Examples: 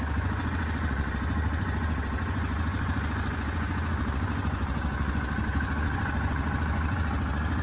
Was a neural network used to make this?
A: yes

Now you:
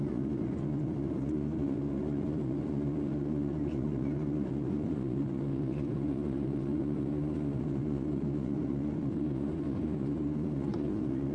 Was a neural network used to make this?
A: yes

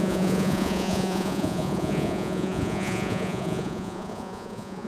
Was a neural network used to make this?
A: yes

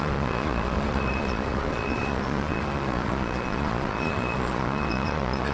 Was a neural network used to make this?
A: yes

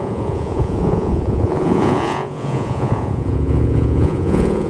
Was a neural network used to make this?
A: yes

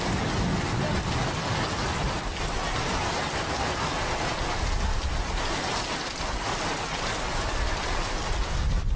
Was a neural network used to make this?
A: no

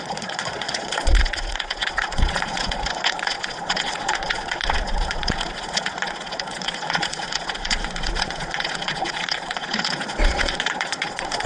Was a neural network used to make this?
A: yes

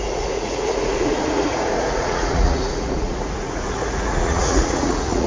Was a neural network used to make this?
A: yes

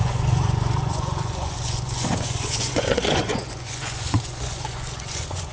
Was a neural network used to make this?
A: yes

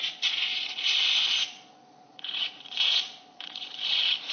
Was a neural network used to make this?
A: yes